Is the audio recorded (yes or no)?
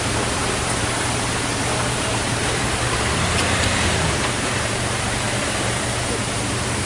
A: no